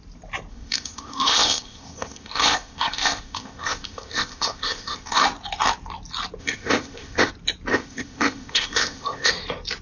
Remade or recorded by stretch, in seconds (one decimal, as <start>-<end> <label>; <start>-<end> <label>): 0.0-0.5 recorded; 0.5-5.2 remade; 5.2-6.4 recorded; 6.4-7.3 remade; 7.3-7.7 recorded; 7.7-9.3 remade; 9.3-9.8 recorded